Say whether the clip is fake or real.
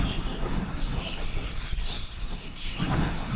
fake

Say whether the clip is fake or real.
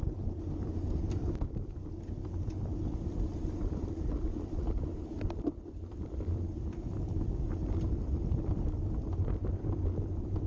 fake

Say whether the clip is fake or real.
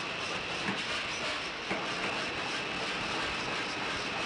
real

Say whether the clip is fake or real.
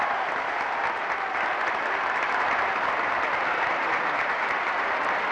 real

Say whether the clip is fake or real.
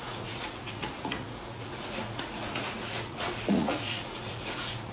fake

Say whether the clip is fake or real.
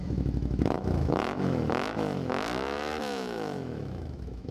fake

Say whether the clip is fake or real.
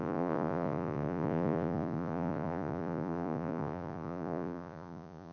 fake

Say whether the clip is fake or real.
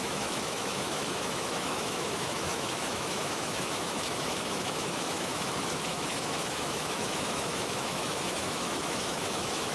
fake